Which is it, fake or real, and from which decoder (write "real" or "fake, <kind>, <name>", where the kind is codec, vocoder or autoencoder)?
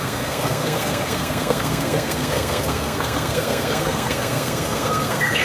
fake, codec, SNAC